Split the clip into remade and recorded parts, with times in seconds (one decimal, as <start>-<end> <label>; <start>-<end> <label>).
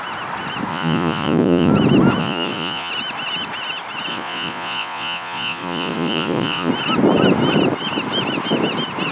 0.0-0.7 recorded; 0.7-1.7 remade; 1.7-2.2 recorded; 2.2-2.9 remade; 2.9-4.1 recorded; 4.1-6.7 remade; 6.7-9.1 recorded